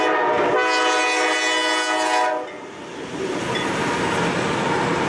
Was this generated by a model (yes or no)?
no